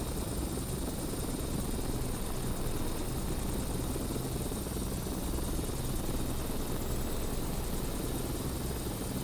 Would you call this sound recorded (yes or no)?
yes